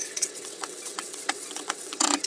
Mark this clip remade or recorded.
remade